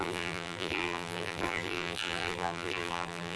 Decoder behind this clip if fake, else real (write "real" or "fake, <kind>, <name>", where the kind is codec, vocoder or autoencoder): fake, vocoder, BigVGAN v2